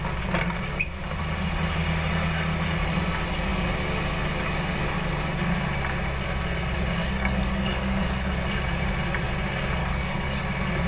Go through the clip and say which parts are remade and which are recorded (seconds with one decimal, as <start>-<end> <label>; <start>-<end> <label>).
0.0-7.0 recorded; 7.0-8.3 remade; 8.3-9.8 recorded; 9.8-10.4 remade; 10.4-10.9 recorded